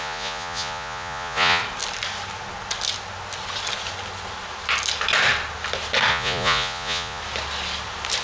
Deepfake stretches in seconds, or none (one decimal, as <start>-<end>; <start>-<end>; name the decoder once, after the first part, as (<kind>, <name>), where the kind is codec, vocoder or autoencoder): 0.0-1.6 (vocoder, Vocos); 6.1-7.2